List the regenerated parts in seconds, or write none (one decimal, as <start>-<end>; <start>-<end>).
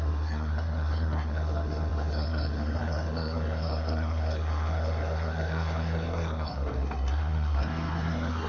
0.0-8.5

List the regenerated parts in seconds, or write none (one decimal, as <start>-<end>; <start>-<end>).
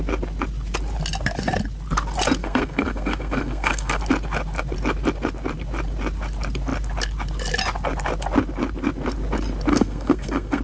2.4-4.0; 9.7-10.6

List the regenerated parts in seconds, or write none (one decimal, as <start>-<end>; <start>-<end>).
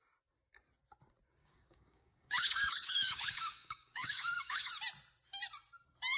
1.4-4.7